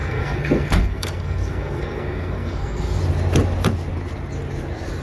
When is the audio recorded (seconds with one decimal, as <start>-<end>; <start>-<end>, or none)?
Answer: 3.0-5.0

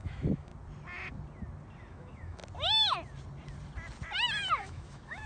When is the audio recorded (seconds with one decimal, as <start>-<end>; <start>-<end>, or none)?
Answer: 0.5-1.9; 2.4-4.5

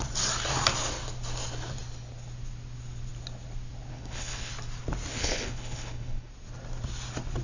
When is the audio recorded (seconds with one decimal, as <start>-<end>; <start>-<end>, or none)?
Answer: 0.0-3.9; 4.5-5.1; 6.3-7.4

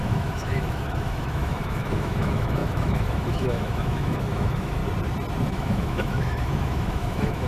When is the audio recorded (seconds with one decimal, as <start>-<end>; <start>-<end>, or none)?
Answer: 4.8-5.5

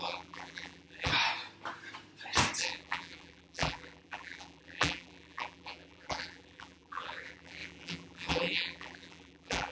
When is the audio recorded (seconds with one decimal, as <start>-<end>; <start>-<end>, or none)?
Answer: 1.1-2.6